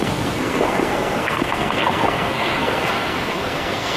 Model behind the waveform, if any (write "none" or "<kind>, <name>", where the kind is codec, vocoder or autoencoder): codec, SNAC